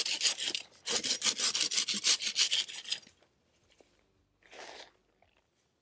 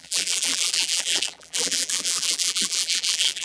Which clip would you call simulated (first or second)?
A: second